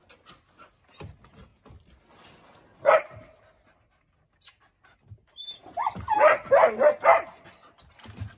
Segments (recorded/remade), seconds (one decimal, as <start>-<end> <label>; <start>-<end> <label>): 0.0-8.4 recorded